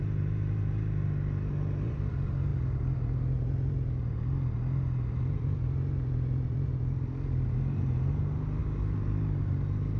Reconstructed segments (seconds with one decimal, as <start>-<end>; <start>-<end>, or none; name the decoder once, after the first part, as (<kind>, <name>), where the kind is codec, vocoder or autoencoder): none